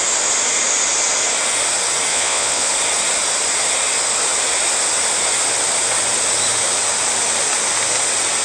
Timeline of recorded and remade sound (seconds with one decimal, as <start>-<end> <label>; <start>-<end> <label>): 0.0-2.1 recorded; 2.1-2.7 remade; 2.7-8.4 recorded